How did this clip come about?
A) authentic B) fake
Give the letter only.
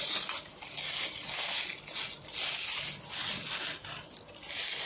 A